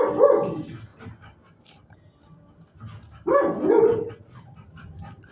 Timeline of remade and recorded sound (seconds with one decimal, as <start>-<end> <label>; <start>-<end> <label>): 0.0-5.3 recorded